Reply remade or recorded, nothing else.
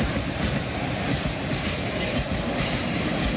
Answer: remade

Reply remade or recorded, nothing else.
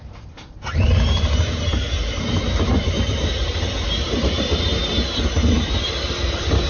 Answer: remade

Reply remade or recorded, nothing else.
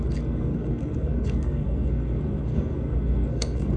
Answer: remade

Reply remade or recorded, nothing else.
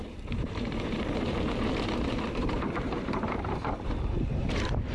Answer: remade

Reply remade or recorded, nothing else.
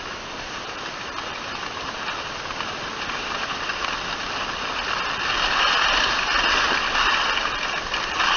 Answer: recorded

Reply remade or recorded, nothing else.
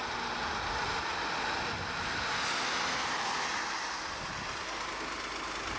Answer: recorded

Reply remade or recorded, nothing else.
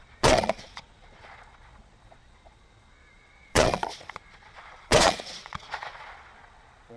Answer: remade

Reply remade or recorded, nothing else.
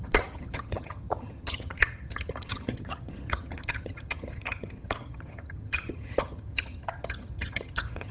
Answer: remade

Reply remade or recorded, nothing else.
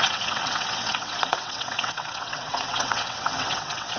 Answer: remade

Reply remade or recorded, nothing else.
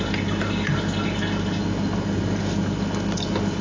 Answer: recorded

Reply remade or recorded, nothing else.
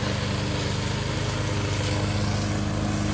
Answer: recorded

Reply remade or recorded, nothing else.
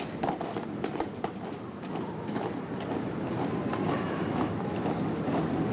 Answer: recorded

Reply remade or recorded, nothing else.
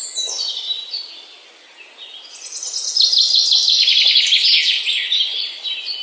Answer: recorded